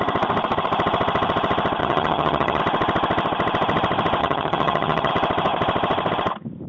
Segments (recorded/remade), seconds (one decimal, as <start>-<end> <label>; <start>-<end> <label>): 0.0-1.8 recorded; 1.8-2.6 remade; 2.6-4.2 recorded; 4.2-5.1 remade; 5.1-6.7 recorded